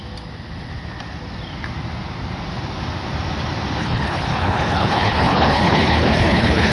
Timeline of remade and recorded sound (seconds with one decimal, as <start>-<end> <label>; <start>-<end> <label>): 0.0-3.8 recorded; 3.8-6.7 remade